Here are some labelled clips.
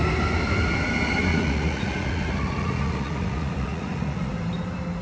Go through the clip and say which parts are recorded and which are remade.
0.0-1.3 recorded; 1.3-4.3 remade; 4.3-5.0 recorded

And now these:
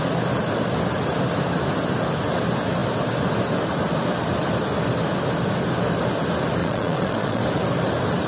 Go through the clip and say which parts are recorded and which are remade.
0.0-6.6 recorded; 6.6-7.4 remade; 7.4-8.3 recorded

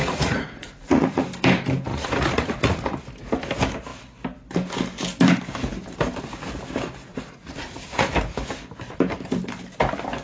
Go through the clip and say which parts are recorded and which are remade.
0.0-1.2 remade; 1.2-1.9 recorded; 1.9-3.0 remade; 3.0-7.1 recorded; 7.1-8.1 remade; 8.1-10.2 recorded

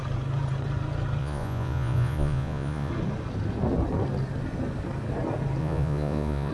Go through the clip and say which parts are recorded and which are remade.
0.0-1.2 recorded; 1.2-2.9 remade; 2.9-5.6 recorded; 5.6-6.5 remade

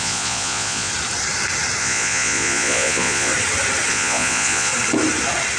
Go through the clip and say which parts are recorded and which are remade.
0.0-0.9 remade; 0.9-1.8 recorded; 1.8-3.3 remade; 3.3-3.9 recorded; 3.9-4.7 remade; 4.7-5.6 recorded

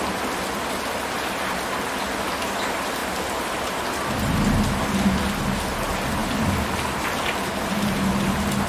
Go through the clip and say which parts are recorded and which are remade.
0.0-8.7 recorded

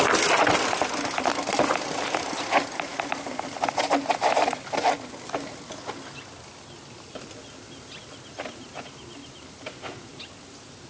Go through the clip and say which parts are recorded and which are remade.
0.0-10.9 recorded